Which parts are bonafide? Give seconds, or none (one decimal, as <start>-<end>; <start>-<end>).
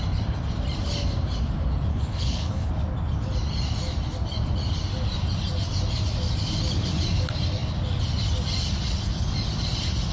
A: 0.0-1.9; 2.7-10.1